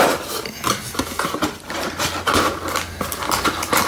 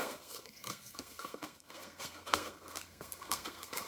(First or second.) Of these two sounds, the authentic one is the first